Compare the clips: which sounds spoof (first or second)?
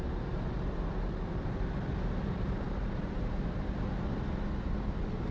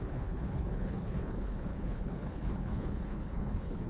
second